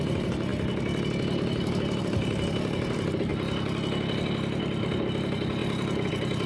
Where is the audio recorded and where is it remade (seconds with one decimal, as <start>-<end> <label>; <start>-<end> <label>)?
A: 0.0-0.5 remade; 0.5-2.0 recorded; 2.0-3.3 remade; 3.3-4.6 recorded; 4.6-5.6 remade; 5.6-6.1 recorded; 6.1-6.5 remade